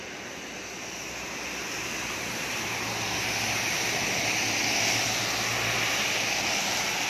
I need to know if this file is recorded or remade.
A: recorded